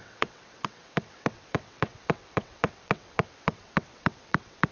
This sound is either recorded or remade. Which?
remade